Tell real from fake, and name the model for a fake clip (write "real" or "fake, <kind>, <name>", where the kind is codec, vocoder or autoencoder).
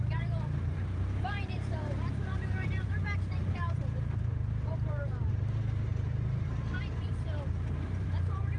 fake, vocoder, BigVGAN v2